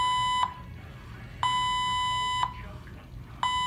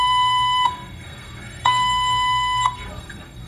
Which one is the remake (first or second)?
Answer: second